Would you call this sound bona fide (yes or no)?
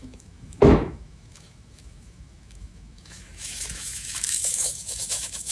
no